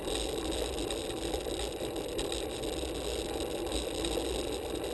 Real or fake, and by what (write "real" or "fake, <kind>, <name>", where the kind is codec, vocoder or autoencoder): real